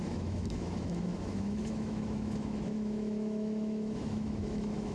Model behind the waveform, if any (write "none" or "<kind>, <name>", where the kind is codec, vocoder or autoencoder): autoencoder, DAC-VAE